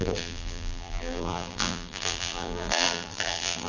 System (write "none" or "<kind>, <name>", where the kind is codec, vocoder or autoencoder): vocoder, BigVGAN v2